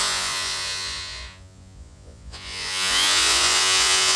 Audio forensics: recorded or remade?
remade